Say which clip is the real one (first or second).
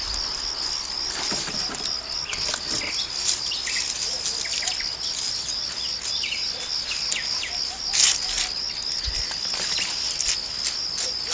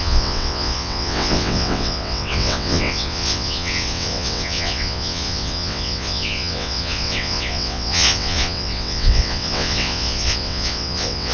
first